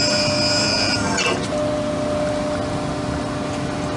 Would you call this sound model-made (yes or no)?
no